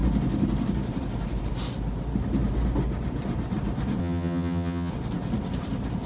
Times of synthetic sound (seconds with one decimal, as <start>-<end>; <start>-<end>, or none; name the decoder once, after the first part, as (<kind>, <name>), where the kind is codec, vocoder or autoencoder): 4.0-4.9 (vocoder, HiFi-GAN)